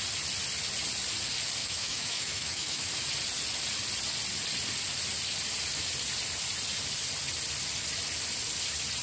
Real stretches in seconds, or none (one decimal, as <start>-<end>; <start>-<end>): 0.0-1.6; 2.9-9.0